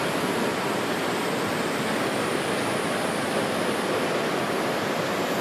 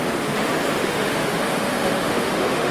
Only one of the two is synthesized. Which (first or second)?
second